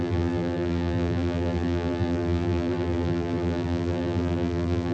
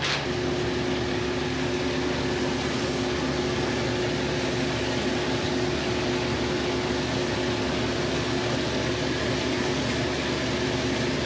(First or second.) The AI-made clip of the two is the first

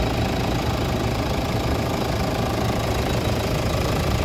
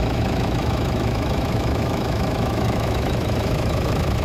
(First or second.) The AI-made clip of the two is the second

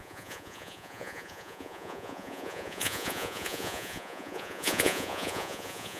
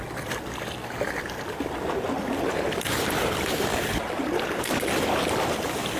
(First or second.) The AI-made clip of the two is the first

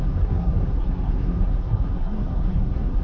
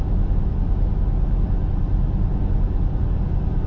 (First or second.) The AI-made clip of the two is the first